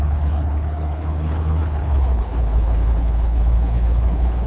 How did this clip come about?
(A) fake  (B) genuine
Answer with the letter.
A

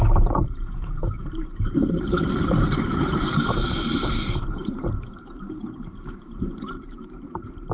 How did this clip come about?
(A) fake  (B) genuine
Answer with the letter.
A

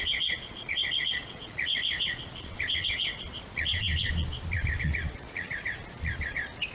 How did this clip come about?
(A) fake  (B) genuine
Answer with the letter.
A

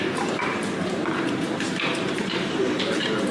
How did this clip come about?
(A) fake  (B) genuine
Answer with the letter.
A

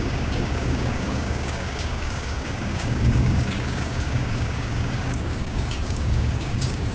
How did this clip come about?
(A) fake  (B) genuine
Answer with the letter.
A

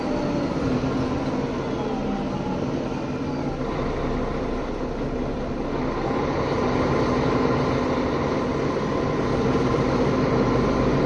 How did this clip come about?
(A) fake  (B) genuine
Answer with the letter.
B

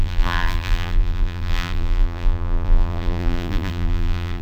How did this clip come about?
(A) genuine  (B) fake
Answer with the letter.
B